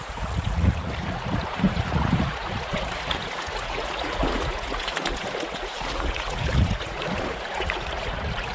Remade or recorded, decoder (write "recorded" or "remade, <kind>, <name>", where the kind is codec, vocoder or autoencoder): remade, vocoder, Vocos